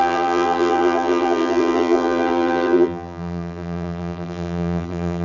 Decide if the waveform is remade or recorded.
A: remade